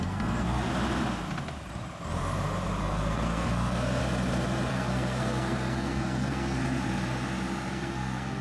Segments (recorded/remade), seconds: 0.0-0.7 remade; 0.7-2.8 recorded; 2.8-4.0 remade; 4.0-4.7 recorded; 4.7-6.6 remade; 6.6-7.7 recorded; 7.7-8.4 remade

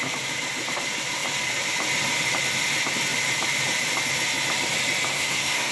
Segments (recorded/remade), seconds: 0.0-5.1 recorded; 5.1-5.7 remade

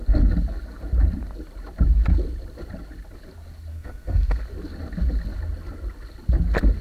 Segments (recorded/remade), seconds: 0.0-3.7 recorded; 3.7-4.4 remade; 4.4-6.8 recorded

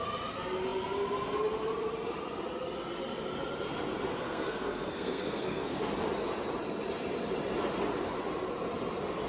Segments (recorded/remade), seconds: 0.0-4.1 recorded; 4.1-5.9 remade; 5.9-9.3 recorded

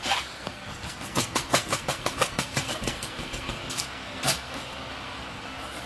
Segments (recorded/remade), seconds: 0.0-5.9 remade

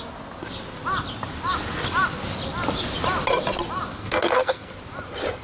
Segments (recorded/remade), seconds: 0.0-3.9 recorded; 3.9-4.7 remade; 4.7-5.4 recorded

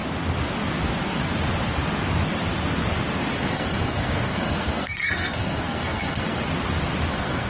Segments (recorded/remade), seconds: 0.0-3.4 recorded; 3.4-6.4 remade; 6.4-7.1 recorded; 7.1-7.5 remade